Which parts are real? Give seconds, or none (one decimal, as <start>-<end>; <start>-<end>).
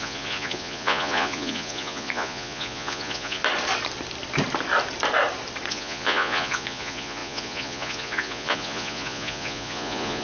3.4-5.7